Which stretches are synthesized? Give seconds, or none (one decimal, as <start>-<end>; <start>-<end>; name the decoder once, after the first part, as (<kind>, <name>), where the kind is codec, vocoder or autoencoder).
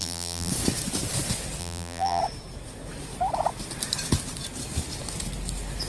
0.0-0.5 (vocoder, BigVGAN v2); 1.6-2.2